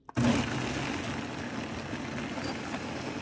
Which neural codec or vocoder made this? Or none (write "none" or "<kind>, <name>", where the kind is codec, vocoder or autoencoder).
none